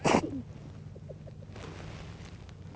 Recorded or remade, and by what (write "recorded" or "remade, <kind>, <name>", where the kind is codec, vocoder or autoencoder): recorded